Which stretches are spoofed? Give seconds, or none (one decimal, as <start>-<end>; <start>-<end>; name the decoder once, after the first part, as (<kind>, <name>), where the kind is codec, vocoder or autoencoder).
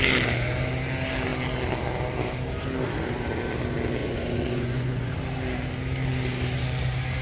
4.0-5.1 (vocoder, Vocos)